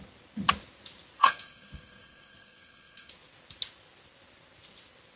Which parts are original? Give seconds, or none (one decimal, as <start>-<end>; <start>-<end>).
0.0-1.2; 3.1-5.2